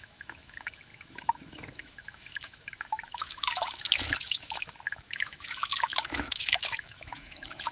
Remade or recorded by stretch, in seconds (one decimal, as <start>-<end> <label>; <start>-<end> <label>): 0.0-7.7 remade